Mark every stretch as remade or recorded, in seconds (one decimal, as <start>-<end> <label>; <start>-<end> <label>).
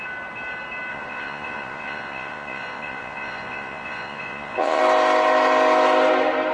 0.0-0.9 recorded; 0.9-4.8 remade; 4.8-6.5 recorded